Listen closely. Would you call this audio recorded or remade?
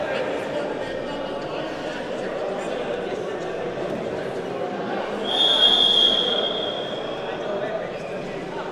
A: recorded